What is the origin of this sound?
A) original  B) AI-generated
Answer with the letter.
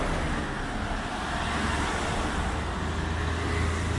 A